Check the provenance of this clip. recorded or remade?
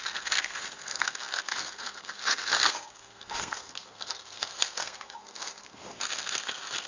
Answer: remade